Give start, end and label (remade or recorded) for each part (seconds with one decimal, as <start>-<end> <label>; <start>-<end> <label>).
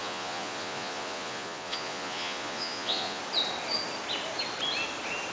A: 0.0-3.2 remade; 3.2-5.3 recorded